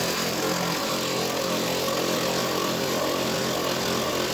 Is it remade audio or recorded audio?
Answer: recorded